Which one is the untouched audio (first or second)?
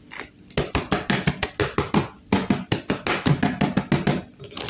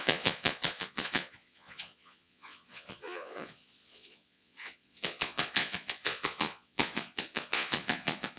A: first